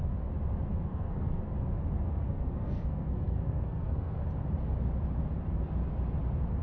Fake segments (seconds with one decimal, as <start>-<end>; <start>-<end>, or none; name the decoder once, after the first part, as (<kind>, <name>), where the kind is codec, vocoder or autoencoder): 0.7-1.4 (codec, SNAC); 2.1-4.2

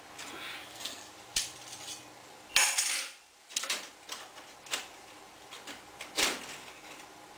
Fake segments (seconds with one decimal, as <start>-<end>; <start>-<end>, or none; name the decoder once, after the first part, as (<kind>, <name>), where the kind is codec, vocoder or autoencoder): 0.6-1.1 (codec, SNAC)